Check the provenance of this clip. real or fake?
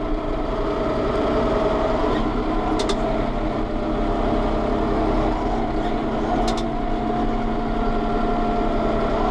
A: real